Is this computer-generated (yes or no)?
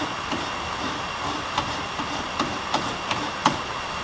no